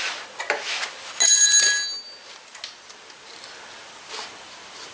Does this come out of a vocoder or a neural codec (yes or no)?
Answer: no